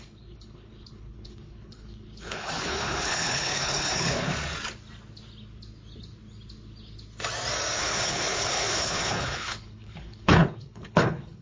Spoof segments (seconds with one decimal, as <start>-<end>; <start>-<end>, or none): 0.0-4.3; 7.8-11.4